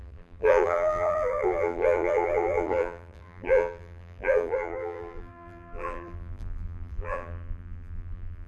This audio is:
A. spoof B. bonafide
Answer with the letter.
A